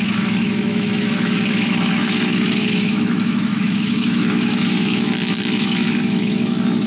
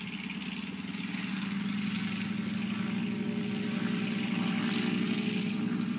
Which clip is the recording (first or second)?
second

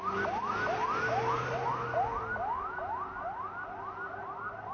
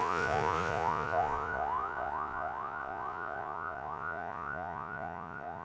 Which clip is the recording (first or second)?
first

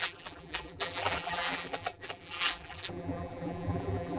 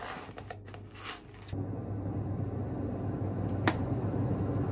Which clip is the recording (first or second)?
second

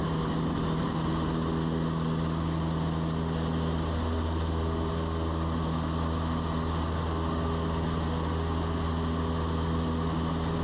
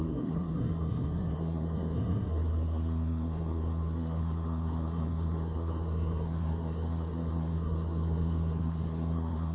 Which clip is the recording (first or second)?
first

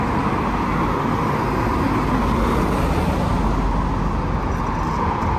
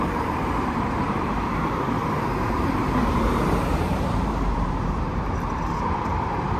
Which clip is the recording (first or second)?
first